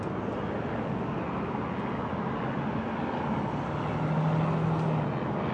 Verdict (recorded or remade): recorded